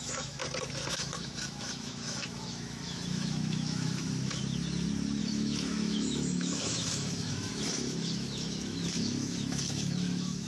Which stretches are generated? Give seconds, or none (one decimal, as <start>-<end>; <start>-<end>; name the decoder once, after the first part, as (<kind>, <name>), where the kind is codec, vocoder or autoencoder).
0.0-0.4 (autoencoder, DAC-VAE); 0.9-4.4; 5.2-10.5